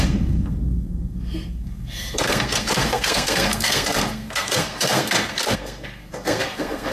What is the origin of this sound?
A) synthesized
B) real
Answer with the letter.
A